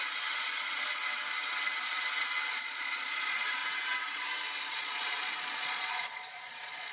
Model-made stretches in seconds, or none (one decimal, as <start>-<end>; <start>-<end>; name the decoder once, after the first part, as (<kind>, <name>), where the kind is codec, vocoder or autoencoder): 0.0-1.0 (vocoder, Vocos); 2.5-3.6; 4.6-6.9